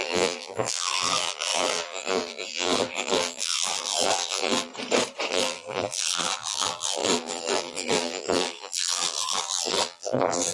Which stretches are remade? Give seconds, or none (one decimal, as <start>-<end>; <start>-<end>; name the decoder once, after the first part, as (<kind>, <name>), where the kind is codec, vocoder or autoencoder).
0.0-4.7 (vocoder, BigVGAN v2); 5.3-10.5

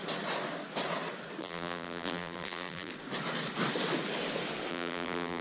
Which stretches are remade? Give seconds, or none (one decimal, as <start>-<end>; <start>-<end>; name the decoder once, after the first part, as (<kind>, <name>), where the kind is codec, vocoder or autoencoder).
1.4-2.9 (vocoder, BigVGAN v2); 4.7-5.4

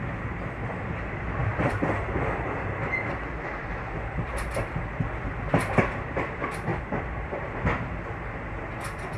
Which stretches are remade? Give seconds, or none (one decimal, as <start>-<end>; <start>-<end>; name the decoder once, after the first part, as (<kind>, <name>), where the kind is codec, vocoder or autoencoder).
1.4-2.0 (vocoder, BigVGAN v2); 6.7-7.5